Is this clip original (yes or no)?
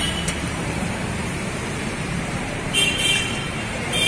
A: no